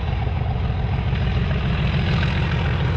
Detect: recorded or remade remade